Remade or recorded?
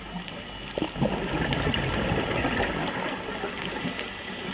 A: recorded